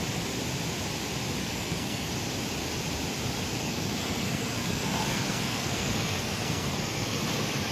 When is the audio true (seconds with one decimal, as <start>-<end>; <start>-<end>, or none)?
0.0-1.4; 2.1-3.5; 7.2-7.7